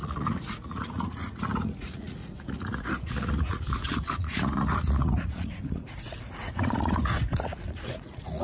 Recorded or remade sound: remade